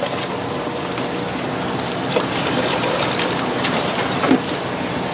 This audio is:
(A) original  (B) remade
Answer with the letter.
A